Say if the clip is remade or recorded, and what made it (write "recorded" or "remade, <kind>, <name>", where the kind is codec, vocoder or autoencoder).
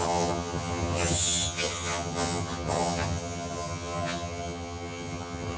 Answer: remade, vocoder, HiFi-GAN